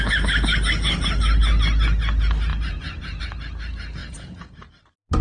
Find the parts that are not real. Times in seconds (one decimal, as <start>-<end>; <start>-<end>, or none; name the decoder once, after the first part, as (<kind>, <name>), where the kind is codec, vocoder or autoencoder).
2.5-3.2 (vocoder, Vocos); 4.0-4.5